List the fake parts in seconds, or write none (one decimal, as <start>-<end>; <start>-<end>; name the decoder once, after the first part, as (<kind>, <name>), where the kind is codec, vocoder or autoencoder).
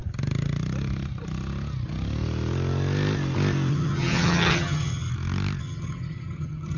3.7-5.1 (vocoder, HiFi-GAN); 5.6-6.8